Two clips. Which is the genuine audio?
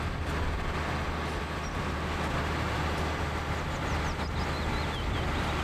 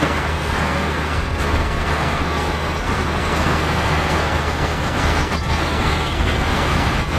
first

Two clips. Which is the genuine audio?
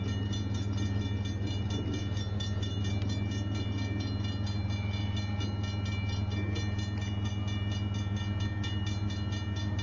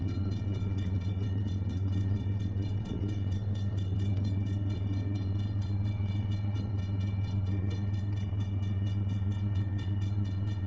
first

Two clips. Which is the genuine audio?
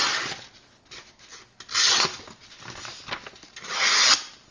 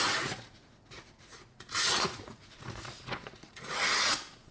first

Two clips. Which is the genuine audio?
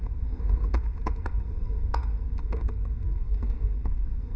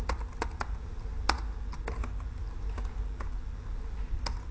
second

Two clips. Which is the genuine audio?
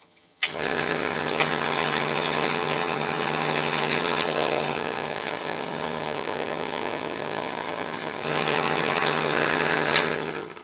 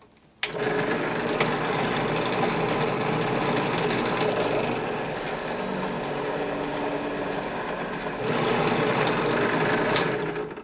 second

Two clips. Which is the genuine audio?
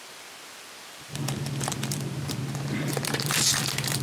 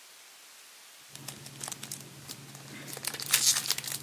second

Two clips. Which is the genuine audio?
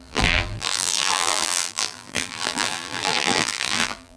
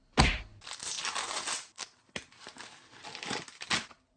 second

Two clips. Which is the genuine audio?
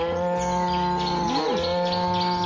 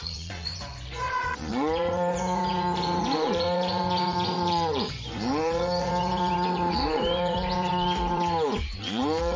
first